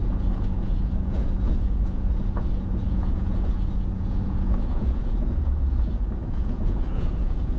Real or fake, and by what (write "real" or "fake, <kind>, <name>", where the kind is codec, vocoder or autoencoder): fake, vocoder, Vocos